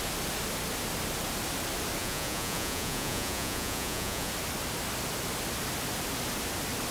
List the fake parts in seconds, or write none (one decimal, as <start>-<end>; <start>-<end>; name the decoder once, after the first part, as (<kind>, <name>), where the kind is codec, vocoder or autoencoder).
2.0-4.3 (vocoder, Vocos)